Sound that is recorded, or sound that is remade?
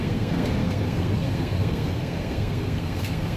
remade